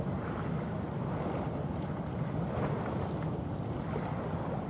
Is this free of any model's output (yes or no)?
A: yes